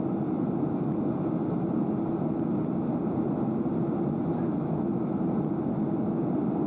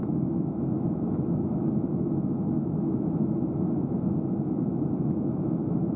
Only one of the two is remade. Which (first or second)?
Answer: second